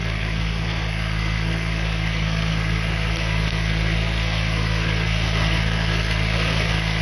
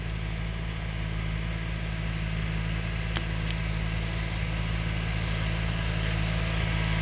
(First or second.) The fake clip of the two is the first